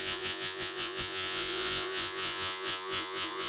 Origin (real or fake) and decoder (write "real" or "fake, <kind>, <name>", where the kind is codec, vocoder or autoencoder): fake, vocoder, Vocos